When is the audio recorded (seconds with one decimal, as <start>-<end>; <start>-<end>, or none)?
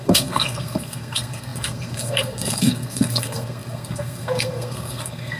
none